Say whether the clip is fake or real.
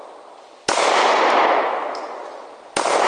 real